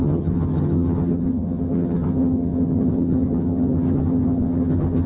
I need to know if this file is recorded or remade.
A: remade